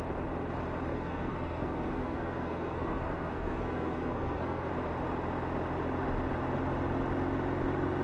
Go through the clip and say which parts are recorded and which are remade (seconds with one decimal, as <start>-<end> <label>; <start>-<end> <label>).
0.0-0.9 recorded; 0.9-4.7 remade; 4.7-8.0 recorded